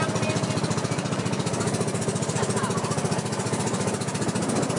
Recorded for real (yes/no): yes